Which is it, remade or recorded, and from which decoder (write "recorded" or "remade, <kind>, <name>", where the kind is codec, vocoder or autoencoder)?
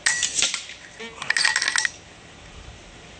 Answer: recorded